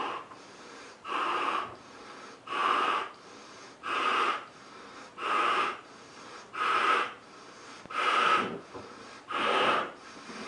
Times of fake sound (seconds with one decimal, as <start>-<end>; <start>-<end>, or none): 0.0-10.5